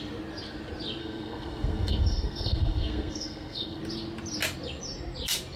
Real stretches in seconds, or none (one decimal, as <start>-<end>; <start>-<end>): 0.0-1.0; 3.8-5.6